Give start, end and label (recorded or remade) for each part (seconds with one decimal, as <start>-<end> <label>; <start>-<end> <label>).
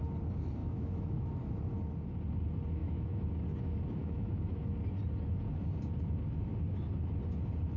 0.0-0.6 recorded; 0.6-1.3 remade; 1.3-2.8 recorded; 2.8-3.3 remade; 3.3-4.0 recorded; 4.0-4.6 remade; 4.6-7.8 recorded